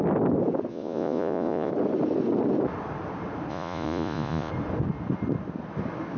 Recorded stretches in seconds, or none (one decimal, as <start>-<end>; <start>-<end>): 0.0-0.7; 1.7-3.5; 4.5-6.2